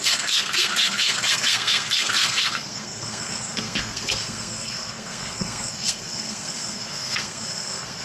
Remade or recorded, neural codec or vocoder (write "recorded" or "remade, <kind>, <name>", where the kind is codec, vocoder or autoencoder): remade, codec, SNAC